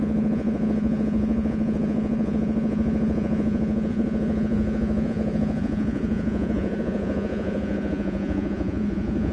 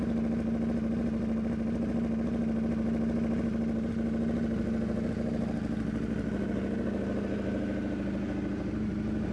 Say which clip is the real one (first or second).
second